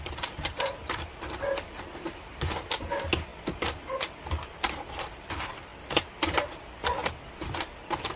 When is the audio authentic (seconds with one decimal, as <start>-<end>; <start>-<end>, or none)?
3.3-5.2; 5.7-6.5